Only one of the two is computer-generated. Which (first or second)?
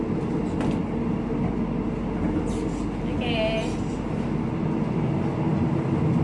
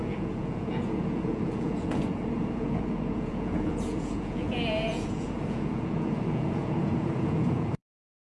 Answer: second